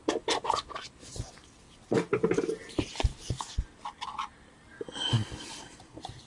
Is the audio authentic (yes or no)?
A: yes